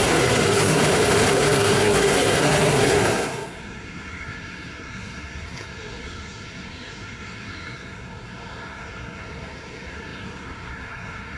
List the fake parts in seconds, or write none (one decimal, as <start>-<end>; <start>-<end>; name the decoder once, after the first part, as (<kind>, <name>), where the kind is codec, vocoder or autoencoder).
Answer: 0.0-0.8 (codec, SNAC); 1.3-11.4